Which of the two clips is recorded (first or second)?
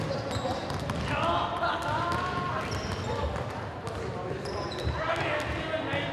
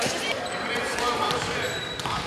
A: first